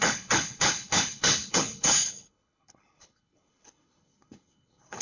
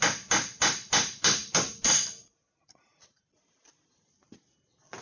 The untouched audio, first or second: second